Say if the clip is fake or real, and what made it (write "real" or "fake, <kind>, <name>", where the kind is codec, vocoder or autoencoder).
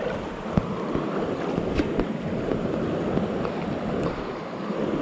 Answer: real